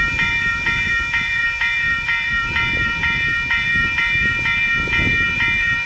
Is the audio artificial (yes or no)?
yes